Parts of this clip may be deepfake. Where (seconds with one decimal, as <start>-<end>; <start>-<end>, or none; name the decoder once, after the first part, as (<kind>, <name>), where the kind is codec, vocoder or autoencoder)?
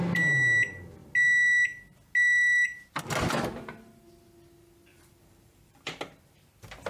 4.9-6.0 (vocoder, BigVGAN v2)